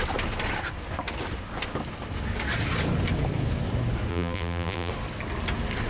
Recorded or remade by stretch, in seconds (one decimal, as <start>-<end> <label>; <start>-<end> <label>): 0.0-4.1 recorded; 4.1-4.9 remade; 4.9-5.9 recorded